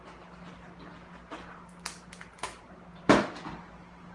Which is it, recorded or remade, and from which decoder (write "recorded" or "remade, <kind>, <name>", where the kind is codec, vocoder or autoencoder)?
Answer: recorded